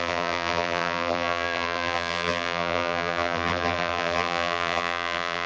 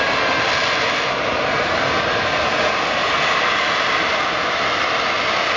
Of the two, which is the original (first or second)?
second